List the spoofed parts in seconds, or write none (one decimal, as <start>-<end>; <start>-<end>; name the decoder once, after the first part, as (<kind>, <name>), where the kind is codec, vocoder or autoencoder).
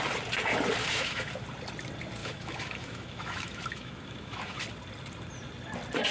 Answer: 0.8-1.3 (autoencoder, DAC-VAE); 2.2-4.6